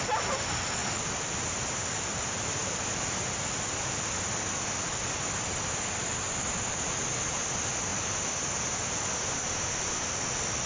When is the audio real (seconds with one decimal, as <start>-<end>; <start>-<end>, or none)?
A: 0.0-10.7